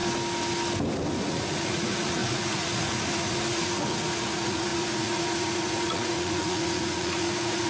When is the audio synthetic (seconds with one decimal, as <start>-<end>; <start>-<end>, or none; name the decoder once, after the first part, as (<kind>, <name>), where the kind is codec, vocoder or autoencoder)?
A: 1.2-7.7 (vocoder, Vocos)